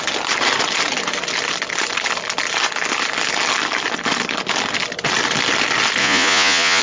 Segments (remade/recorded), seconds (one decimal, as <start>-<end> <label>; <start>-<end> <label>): 0.0-6.0 recorded; 6.0-6.8 remade